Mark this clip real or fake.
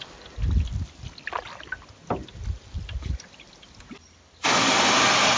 real